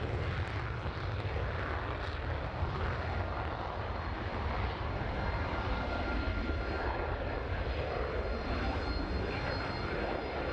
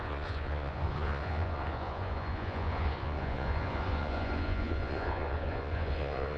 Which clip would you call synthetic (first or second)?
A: second